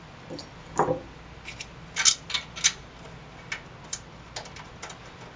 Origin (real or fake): real